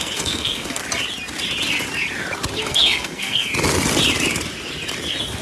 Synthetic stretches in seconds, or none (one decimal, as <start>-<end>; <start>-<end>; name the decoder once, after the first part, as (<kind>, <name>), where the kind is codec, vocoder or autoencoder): 0.0-0.8 (codec, SNAC); 2.6-3.5